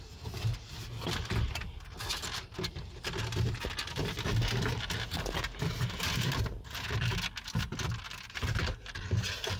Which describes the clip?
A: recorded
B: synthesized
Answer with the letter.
A